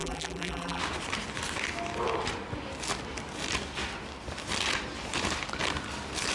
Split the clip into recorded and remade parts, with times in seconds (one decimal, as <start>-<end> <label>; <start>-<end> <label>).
0.0-0.8 remade; 0.8-6.3 recorded